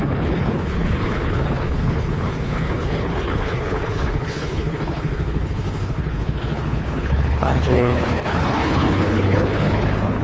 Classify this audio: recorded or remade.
remade